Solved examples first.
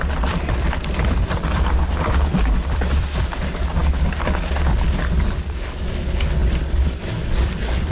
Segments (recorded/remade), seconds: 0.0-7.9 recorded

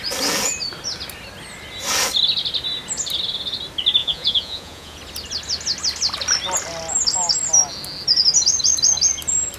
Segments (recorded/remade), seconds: 0.0-4.0 recorded; 4.0-5.0 remade; 5.0-9.6 recorded

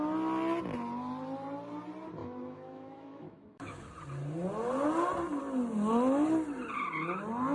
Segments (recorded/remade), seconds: 0.0-2.2 recorded; 2.2-3.9 remade; 3.9-7.5 recorded

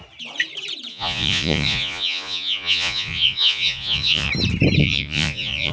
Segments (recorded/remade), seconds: 0.0-0.9 recorded; 0.9-4.3 remade; 4.3-4.8 recorded; 4.8-5.7 remade

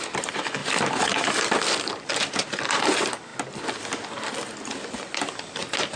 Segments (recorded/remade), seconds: 0.0-6.0 recorded